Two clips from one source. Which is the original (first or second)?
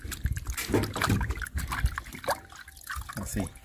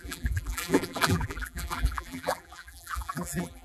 first